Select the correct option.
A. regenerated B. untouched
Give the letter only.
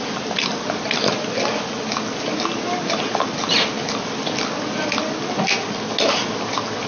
B